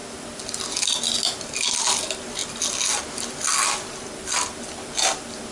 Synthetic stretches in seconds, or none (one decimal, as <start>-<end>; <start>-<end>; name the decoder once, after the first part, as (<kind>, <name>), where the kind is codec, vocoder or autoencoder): none